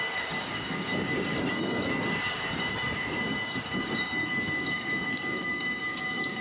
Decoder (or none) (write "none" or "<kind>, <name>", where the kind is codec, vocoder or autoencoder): codec, DAC